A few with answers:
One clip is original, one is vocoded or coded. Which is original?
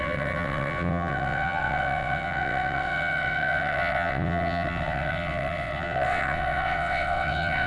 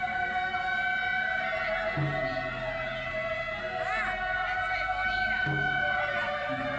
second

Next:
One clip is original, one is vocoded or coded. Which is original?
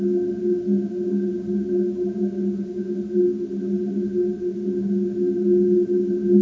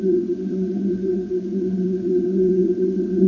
first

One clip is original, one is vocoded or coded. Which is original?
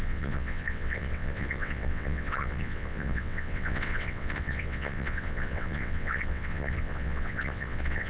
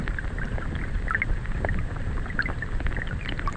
second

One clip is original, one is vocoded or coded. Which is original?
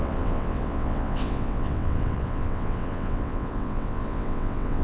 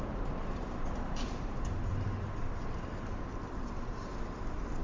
second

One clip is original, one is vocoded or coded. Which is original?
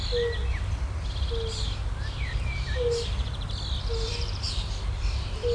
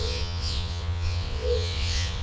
first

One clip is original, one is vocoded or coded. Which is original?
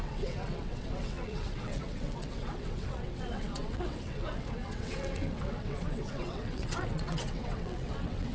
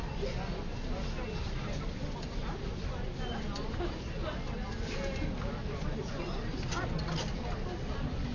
second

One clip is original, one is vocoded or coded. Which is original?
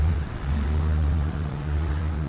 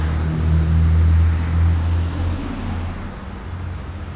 second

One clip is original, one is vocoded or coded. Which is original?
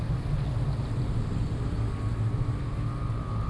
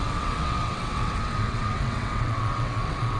first